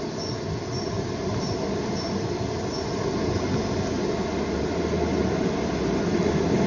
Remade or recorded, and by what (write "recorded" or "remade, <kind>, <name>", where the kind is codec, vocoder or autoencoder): recorded